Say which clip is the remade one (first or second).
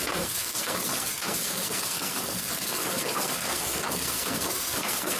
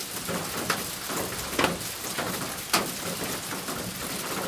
first